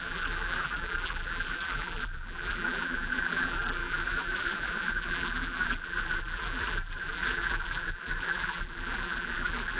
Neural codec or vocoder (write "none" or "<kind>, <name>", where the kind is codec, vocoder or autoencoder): vocoder, BigVGAN v2